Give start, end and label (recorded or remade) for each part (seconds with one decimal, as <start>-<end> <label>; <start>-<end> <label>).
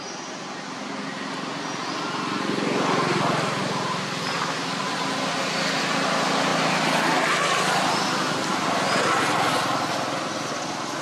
0.0-11.0 recorded